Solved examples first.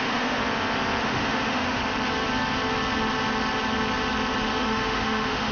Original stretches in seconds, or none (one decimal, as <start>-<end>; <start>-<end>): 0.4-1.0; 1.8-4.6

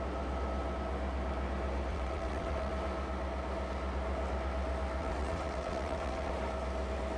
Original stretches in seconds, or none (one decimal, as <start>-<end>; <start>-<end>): 0.0-1.9; 2.7-5.0; 6.3-7.2

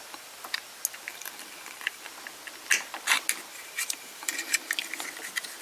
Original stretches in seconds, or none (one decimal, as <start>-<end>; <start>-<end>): 0.0-1.1; 2.0-3.5; 4.7-5.6

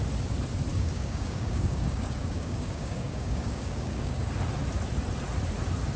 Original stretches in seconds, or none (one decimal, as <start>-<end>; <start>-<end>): 0.0-0.7; 4.3-6.0

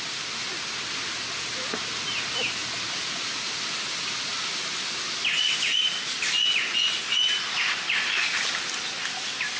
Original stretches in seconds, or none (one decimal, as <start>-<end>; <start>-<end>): 0.0-9.6

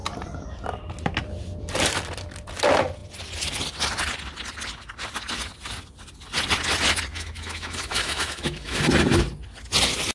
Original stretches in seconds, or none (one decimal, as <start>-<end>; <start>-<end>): 0.0-7.1; 8.8-10.1

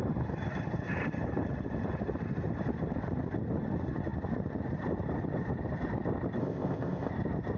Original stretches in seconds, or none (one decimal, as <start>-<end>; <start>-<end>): 0.0-6.4; 7.1-7.6

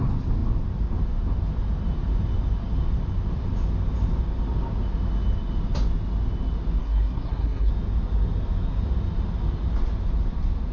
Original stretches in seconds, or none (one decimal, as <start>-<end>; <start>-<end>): 0.0-6.8; 7.7-10.7